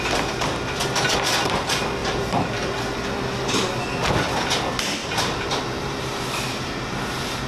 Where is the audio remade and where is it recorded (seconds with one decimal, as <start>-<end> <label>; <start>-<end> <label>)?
0.0-2.0 recorded; 2.0-2.7 remade; 2.7-5.0 recorded; 5.0-7.5 remade

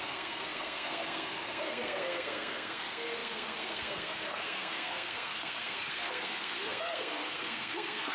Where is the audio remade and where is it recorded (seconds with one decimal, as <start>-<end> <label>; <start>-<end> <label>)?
0.0-8.1 remade

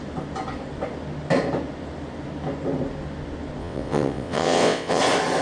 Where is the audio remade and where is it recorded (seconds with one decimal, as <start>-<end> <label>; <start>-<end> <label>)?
0.0-3.6 recorded; 3.6-5.0 remade; 5.0-5.4 recorded

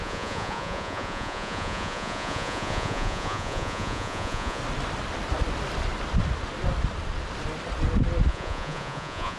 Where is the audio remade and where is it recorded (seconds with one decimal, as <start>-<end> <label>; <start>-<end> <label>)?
0.0-4.6 remade; 4.6-8.3 recorded; 8.3-9.4 remade

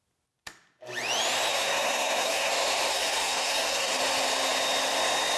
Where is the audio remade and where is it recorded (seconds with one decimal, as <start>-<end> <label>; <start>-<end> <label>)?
0.0-1.5 recorded; 1.5-2.5 remade; 2.5-2.9 recorded; 2.9-4.0 remade; 4.0-5.4 recorded

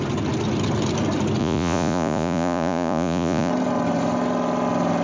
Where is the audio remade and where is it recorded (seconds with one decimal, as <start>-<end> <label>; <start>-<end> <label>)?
0.0-1.4 recorded; 1.4-3.5 remade; 3.5-5.0 recorded

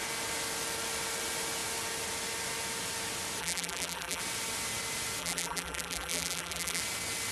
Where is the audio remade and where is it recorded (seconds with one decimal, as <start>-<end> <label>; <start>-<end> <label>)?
0.0-3.4 recorded; 3.4-4.2 remade; 4.2-5.2 recorded; 5.2-6.8 remade; 6.8-7.3 recorded

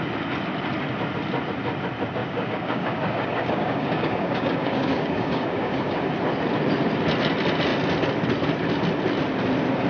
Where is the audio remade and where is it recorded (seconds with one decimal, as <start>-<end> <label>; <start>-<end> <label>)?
0.0-2.2 recorded; 2.2-6.1 remade; 6.1-9.9 recorded